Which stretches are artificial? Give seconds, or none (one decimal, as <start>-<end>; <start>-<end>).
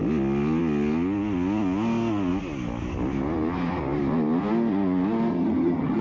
5.3-6.0